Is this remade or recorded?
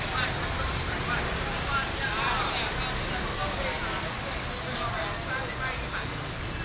recorded